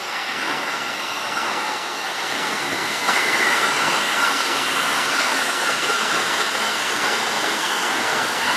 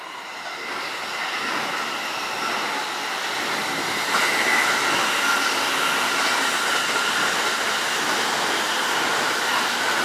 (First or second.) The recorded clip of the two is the second